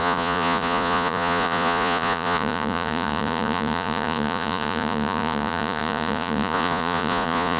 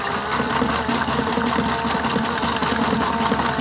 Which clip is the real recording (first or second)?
second